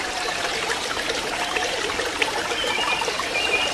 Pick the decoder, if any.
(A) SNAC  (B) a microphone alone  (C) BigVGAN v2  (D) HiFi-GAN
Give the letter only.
B